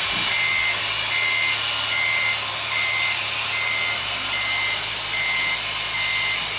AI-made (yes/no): no